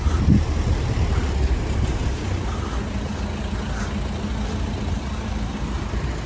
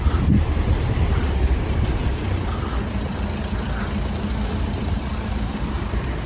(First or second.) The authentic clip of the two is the first